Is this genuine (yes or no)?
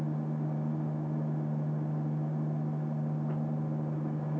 yes